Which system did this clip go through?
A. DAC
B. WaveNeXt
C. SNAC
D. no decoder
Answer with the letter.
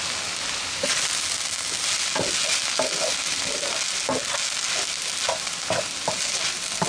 D